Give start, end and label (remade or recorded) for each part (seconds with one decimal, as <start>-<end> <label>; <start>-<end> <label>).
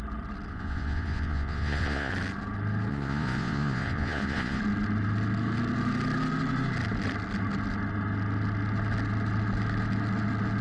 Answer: 0.0-0.5 recorded; 0.5-2.1 remade; 2.1-2.9 recorded; 2.9-4.6 remade; 4.6-10.6 recorded